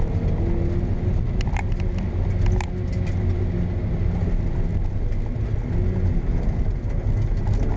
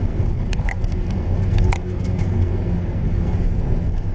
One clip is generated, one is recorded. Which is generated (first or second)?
second